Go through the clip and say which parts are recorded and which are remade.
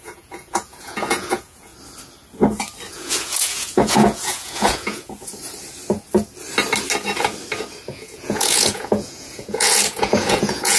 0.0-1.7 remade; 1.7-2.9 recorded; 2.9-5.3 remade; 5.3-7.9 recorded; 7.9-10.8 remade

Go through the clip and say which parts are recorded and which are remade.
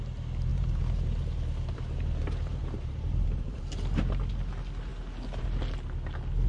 0.0-0.5 recorded; 0.5-3.6 remade; 3.6-6.5 recorded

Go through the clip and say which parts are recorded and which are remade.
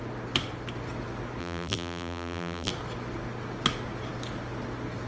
0.0-1.4 recorded; 1.4-2.7 remade; 2.7-5.1 recorded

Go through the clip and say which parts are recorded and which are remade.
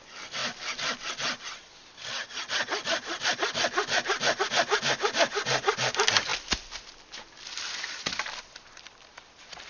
0.0-9.7 recorded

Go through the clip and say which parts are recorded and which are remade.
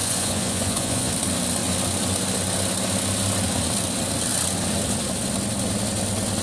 0.0-1.1 remade; 1.1-6.4 recorded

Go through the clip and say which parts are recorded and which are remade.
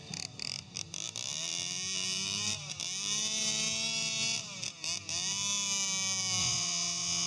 0.0-6.4 recorded; 6.4-7.3 remade